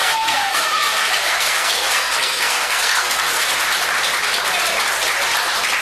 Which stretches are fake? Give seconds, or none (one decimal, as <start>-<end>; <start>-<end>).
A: 0.0-3.5